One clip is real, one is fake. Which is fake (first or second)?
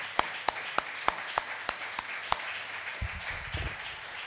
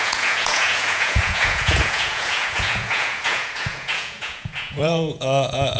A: second